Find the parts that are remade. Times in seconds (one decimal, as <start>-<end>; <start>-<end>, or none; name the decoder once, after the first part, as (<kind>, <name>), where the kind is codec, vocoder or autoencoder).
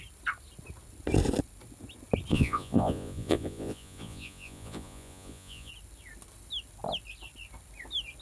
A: 2.3-5.7 (vocoder, Vocos)